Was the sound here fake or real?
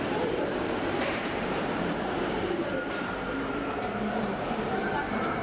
fake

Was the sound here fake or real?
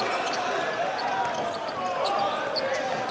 real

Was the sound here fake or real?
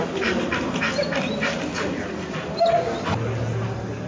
real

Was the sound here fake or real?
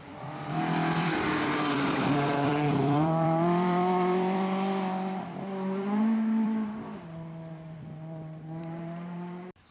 fake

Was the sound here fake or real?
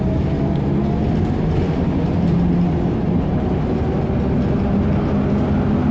real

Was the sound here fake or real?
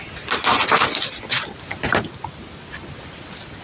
real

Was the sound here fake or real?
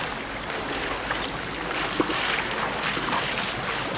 real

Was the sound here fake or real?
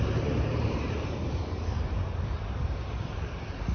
fake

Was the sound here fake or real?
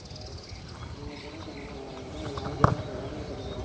real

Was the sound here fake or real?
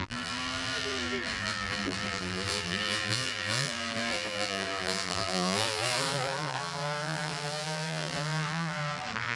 fake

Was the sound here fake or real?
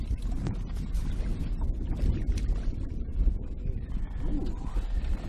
real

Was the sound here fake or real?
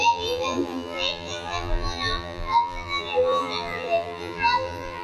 fake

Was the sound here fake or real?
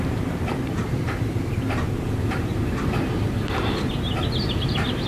fake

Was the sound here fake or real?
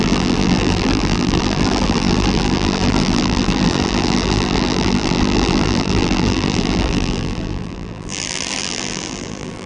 fake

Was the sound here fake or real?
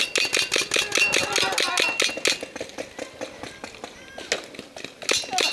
real